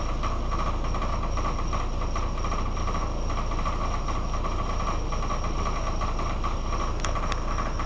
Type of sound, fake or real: real